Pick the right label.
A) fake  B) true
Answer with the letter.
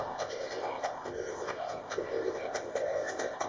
A